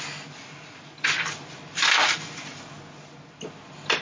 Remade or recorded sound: recorded